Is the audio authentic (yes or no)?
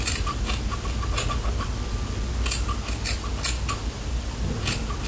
yes